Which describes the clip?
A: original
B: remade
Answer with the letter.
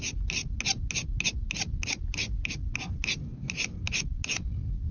A